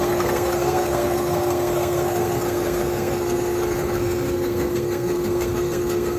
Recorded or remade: remade